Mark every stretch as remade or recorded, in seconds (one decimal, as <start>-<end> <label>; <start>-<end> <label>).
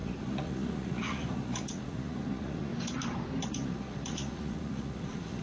0.0-2.7 remade; 2.7-3.4 recorded; 3.4-5.4 remade